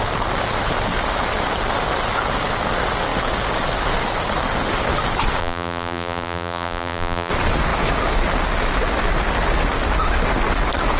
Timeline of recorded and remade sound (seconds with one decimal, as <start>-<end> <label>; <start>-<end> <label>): 0.0-5.4 recorded; 5.4-7.3 remade; 7.3-11.0 recorded